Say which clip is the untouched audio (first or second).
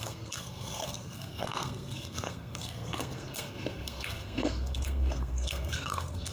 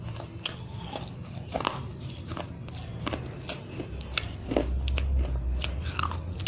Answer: second